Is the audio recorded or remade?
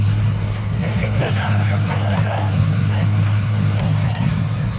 remade